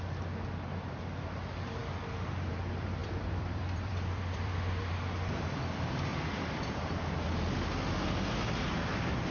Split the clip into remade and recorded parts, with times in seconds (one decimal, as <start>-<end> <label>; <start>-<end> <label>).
0.0-3.0 recorded; 3.0-4.9 remade; 4.9-6.1 recorded; 6.1-6.9 remade; 6.9-9.3 recorded